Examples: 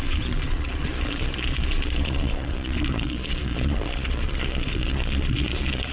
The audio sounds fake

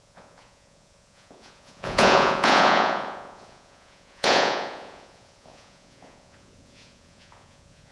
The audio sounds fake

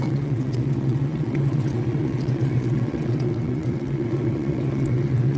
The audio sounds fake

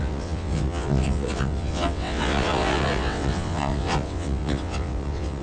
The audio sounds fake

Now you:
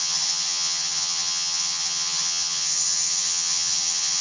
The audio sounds fake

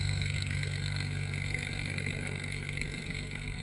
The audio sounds fake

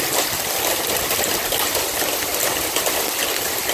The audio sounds real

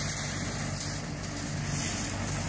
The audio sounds real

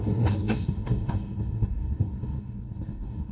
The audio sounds fake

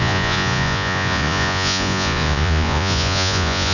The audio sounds fake